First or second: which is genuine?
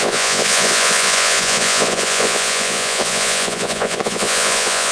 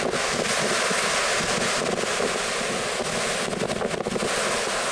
second